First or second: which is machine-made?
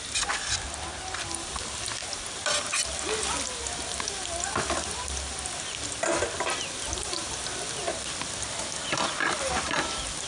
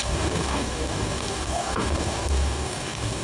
second